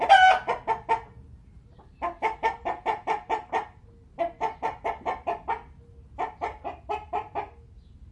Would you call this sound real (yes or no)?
yes